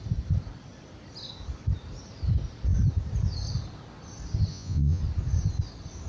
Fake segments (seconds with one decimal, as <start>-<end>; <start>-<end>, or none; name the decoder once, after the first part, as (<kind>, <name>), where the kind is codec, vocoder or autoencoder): 4.5-5.0 (vocoder, Vocos)